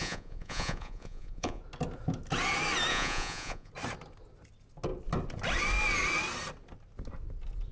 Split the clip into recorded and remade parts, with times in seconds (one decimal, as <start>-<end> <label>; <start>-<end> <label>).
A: 0.0-1.6 remade; 1.6-2.9 recorded; 2.9-3.7 remade; 3.7-7.7 recorded